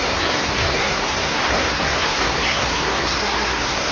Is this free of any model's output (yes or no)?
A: no